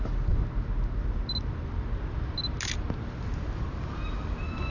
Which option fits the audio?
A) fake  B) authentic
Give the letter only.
B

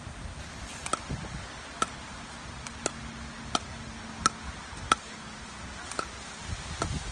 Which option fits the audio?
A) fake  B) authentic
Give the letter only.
B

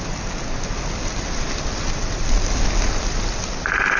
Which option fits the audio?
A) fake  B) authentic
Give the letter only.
B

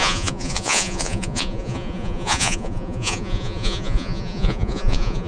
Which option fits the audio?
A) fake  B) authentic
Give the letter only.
A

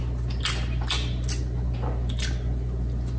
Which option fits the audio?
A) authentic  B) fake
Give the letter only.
A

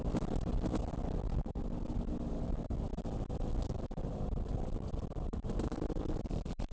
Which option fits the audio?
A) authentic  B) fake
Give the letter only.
A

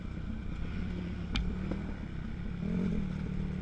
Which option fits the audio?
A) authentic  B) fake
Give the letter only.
A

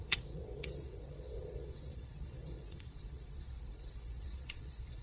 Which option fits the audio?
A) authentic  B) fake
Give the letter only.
B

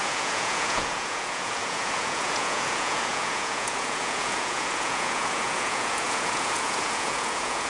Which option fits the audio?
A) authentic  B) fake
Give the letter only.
B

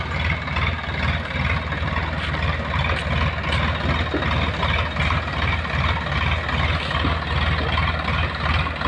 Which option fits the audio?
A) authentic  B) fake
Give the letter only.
A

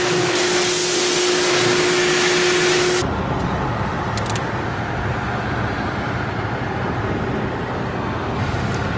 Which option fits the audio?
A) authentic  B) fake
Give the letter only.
A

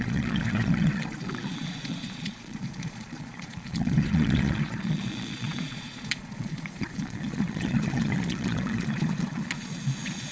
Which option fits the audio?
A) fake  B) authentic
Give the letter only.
A